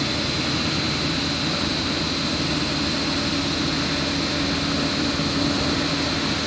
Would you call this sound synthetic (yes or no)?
no